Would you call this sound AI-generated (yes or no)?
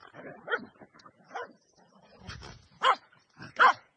yes